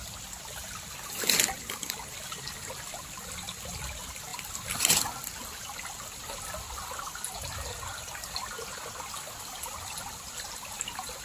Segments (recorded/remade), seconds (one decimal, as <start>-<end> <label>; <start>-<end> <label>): 0.0-11.2 recorded